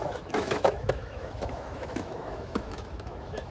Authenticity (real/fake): fake